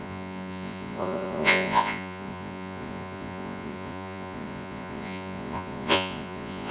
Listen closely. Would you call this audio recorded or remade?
remade